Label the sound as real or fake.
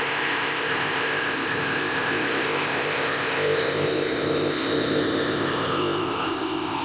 fake